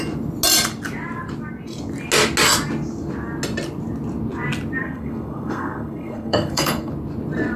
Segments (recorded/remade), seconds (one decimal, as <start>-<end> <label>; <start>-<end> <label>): 0.0-4.8 recorded; 4.8-6.9 remade; 6.9-7.6 recorded